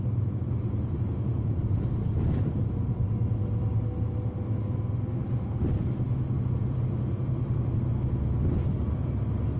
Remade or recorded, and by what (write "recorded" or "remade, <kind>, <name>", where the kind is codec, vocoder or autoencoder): recorded